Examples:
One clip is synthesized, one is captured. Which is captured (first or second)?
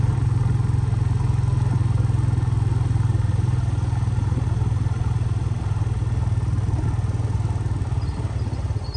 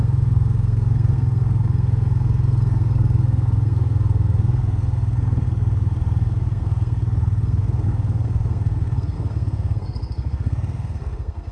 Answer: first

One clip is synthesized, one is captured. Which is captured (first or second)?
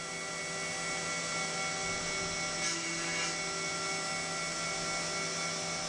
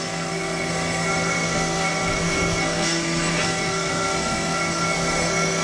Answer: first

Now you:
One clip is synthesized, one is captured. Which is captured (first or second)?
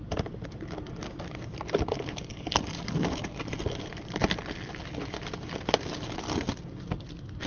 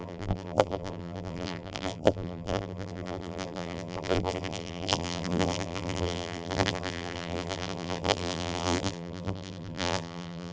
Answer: first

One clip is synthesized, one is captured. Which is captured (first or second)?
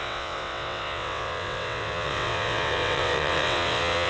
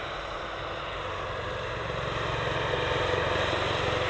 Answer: second